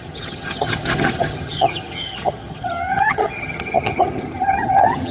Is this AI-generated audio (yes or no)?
yes